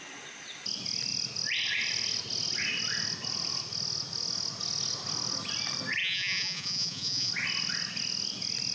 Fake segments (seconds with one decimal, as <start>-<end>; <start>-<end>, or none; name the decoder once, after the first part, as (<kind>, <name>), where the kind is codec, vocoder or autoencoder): 6.0-7.3 (vocoder, Vocos)